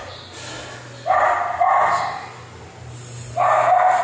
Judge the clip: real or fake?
real